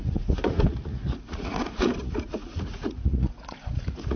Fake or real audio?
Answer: fake